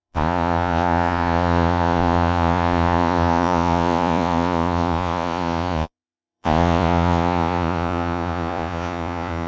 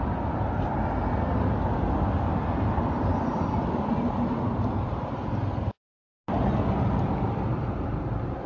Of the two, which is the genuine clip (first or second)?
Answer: second